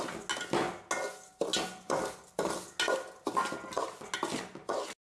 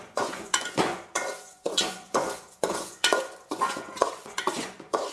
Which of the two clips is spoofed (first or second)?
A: second